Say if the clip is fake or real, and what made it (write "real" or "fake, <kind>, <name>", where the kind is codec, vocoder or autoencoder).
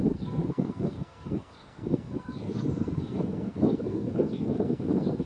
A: fake, codec, SNAC